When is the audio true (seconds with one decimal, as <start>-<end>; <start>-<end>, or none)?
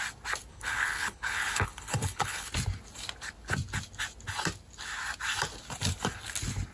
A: 0.0-0.5; 2.5-6.7